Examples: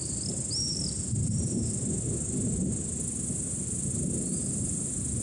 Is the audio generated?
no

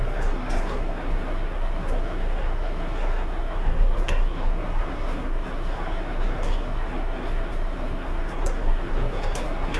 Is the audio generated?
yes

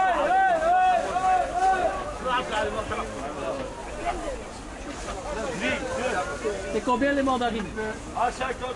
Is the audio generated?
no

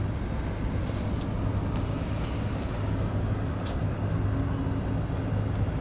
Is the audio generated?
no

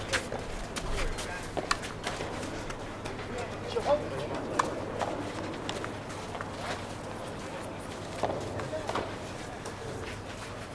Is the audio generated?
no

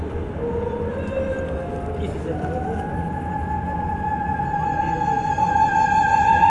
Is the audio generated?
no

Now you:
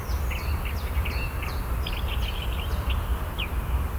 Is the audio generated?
no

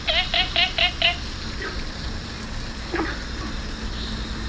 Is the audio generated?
no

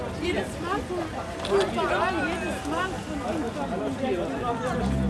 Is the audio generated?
no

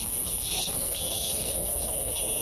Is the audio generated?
yes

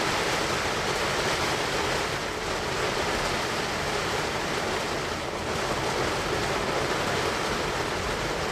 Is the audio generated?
no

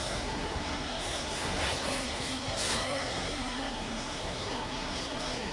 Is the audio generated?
yes